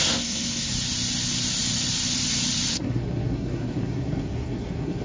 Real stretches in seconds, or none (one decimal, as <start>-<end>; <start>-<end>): 0.7-2.7